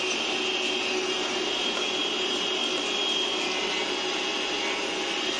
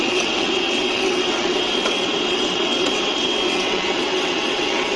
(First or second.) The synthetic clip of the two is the second